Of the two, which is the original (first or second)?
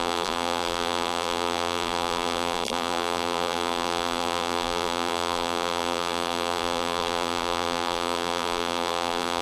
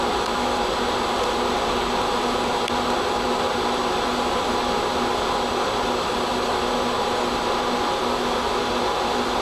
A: second